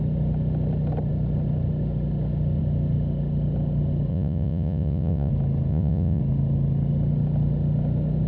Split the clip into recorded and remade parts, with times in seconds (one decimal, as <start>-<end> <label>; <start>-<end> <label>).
0.0-4.1 recorded; 4.1-5.3 remade; 5.3-5.7 recorded; 5.7-6.2 remade; 6.2-8.3 recorded